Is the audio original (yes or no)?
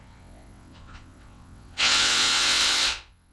no